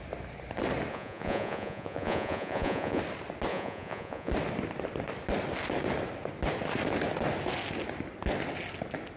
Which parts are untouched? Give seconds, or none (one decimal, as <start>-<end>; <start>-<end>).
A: 0.0-0.9; 3.0-3.5; 4.3-9.2